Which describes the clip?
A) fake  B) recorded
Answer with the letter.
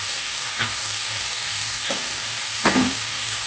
A